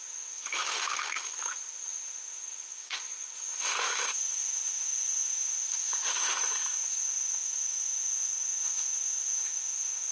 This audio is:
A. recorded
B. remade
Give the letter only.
B